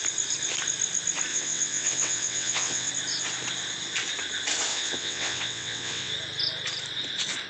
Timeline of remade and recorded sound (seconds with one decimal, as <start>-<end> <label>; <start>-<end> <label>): 0.0-1.3 recorded; 1.3-2.9 remade; 2.9-4.7 recorded; 4.7-6.1 remade; 6.1-7.5 recorded